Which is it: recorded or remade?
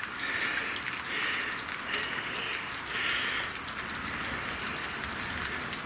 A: recorded